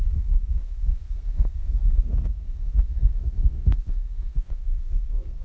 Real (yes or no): no